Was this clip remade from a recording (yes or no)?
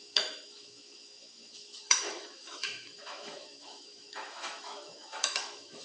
yes